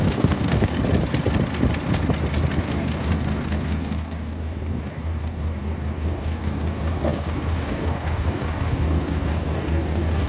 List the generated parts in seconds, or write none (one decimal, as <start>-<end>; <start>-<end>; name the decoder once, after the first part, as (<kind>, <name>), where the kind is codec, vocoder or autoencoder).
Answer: 0.0-0.7 (codec, DAC); 2.5-10.3